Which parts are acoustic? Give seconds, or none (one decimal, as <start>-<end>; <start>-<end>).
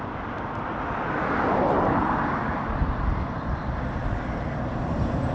0.0-2.0